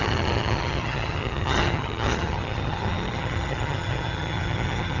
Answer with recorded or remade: remade